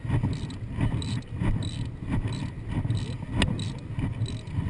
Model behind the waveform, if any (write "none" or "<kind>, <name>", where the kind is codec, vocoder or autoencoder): none